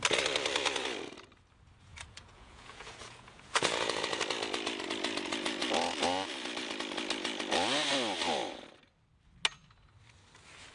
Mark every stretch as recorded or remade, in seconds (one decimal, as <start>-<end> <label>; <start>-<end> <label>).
0.0-1.9 recorded; 1.9-4.2 remade; 4.2-10.7 recorded